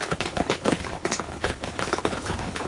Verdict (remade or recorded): remade